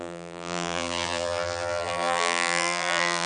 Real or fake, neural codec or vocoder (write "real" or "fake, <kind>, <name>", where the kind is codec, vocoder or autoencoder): fake, vocoder, BigVGAN v2